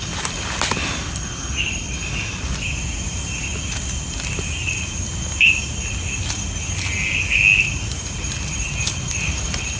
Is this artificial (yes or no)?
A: no